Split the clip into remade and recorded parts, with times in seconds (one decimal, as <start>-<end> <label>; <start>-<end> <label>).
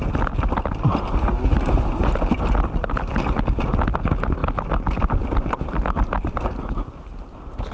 0.0-7.7 recorded